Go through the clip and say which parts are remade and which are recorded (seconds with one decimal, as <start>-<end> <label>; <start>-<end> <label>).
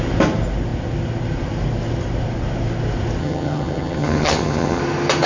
0.0-3.2 recorded; 3.2-4.8 remade; 4.8-5.3 recorded